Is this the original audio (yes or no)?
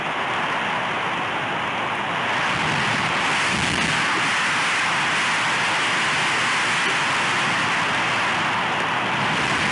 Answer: yes